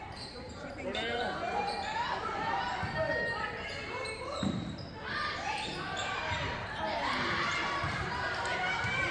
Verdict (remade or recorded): remade